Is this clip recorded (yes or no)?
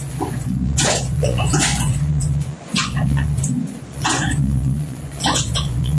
no